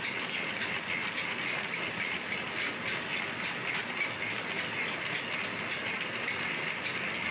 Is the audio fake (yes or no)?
no